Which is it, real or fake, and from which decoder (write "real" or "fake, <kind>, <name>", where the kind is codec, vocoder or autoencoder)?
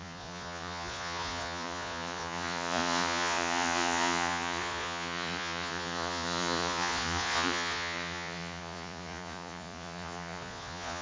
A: fake, vocoder, Vocos